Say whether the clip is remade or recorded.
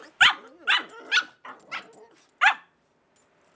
recorded